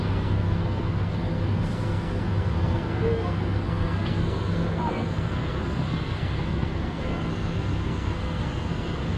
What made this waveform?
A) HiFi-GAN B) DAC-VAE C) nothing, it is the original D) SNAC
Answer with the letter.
D